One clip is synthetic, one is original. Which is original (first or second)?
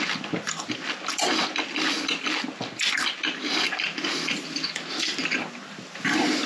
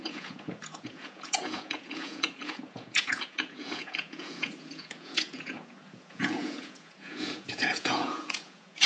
first